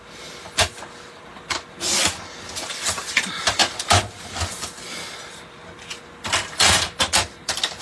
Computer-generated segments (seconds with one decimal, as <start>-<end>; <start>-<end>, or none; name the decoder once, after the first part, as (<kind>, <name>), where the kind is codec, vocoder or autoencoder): none